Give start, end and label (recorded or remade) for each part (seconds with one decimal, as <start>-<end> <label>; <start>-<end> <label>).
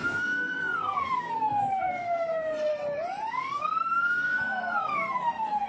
0.0-2.7 remade; 2.7-3.3 recorded; 3.3-5.7 remade